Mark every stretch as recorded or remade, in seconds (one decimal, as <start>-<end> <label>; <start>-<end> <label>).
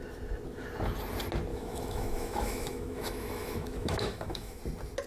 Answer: 0.0-1.5 recorded; 1.5-4.6 remade; 4.6-5.1 recorded